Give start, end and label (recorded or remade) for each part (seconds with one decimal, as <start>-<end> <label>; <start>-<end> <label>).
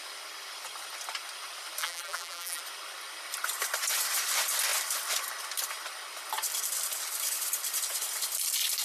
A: 0.0-1.8 recorded; 1.8-2.6 remade; 2.6-8.8 recorded